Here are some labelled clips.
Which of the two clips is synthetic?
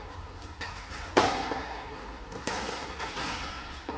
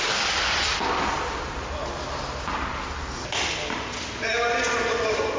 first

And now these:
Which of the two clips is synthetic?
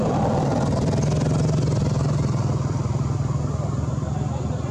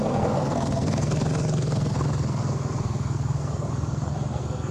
second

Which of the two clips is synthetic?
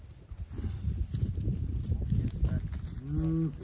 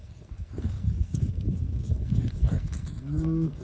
second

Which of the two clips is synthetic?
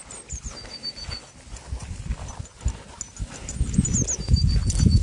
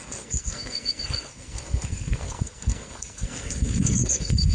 second